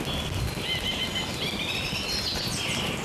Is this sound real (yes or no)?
yes